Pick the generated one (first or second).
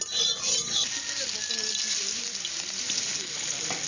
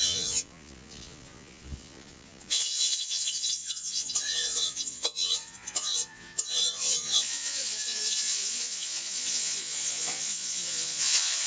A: second